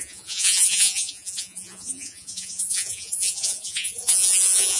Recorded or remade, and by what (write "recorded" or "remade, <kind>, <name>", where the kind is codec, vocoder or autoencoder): remade, vocoder, Vocos